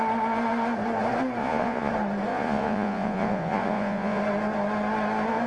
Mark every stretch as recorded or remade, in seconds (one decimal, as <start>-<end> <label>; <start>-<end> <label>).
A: 0.0-1.4 recorded; 1.4-1.9 remade; 1.9-2.3 recorded; 2.3-4.2 remade; 4.2-5.5 recorded